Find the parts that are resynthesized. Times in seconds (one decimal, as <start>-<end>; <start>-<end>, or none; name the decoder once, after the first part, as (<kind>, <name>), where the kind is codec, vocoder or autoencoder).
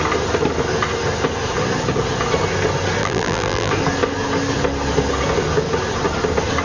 3.0-3.7 (vocoder, BigVGAN v2)